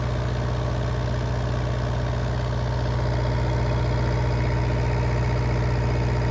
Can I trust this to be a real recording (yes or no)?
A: yes